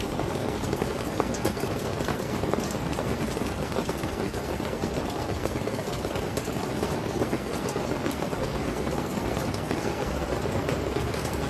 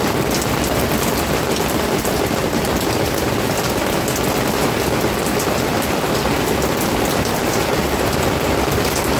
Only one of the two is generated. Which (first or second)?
first